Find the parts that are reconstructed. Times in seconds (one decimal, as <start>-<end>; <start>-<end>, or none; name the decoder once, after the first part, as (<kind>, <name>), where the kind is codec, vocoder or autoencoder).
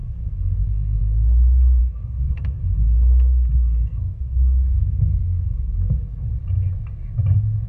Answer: 0.0-1.0 (codec, SNAC); 1.8-6.3